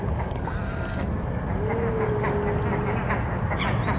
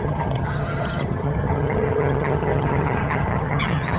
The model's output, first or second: second